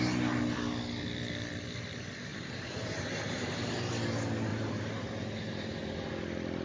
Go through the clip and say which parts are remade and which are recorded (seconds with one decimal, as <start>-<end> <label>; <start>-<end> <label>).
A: 0.0-2.3 recorded; 2.3-3.9 remade; 3.9-4.5 recorded; 4.5-6.1 remade; 6.1-6.6 recorded